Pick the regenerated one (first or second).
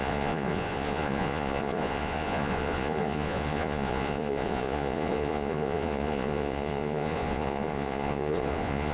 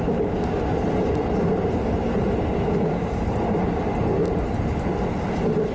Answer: first